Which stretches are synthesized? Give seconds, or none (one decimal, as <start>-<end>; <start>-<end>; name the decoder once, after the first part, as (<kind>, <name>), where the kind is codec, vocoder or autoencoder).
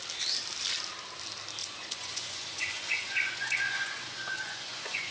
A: 1.6-5.1 (vocoder, Vocos)